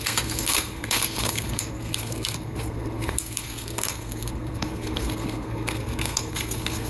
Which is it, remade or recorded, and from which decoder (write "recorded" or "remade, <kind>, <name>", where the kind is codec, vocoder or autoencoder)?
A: remade, codec, SNAC